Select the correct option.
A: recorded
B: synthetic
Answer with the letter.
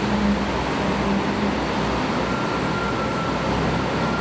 A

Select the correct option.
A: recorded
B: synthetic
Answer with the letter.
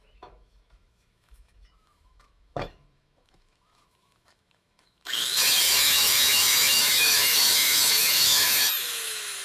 B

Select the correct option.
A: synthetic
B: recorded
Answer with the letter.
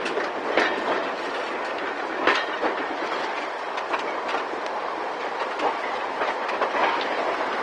B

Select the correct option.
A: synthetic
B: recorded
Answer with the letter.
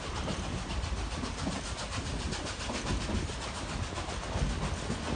B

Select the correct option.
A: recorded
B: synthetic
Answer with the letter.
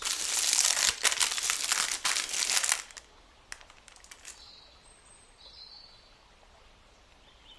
A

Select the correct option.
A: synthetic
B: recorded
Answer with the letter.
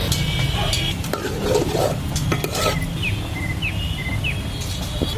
B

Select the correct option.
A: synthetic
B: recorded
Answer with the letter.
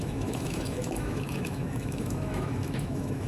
A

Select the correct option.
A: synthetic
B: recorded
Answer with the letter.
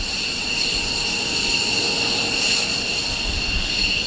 B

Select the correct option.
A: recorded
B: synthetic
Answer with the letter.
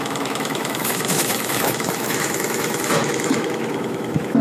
B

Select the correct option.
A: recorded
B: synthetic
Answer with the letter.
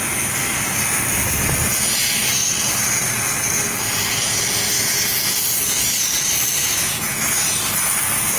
A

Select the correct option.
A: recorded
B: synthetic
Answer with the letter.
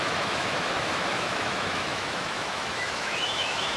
B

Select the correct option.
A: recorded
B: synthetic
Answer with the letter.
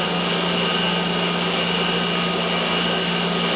A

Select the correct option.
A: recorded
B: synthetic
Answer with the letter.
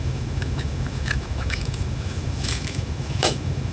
B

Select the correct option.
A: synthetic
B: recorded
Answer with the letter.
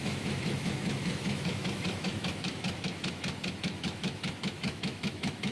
A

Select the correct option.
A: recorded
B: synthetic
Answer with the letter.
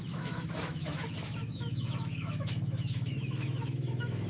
B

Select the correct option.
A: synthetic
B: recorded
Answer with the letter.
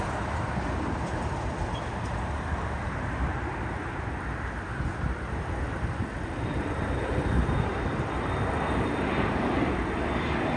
B